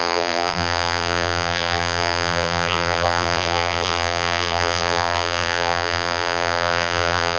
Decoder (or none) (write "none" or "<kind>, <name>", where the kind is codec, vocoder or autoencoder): vocoder, BigVGAN v2